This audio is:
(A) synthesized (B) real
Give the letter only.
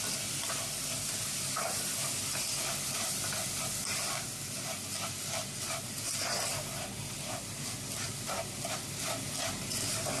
B